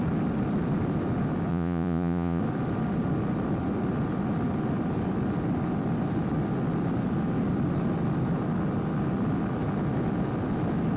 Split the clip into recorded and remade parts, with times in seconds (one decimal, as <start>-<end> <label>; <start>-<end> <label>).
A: 0.0-1.5 recorded; 1.5-2.4 remade; 2.4-11.0 recorded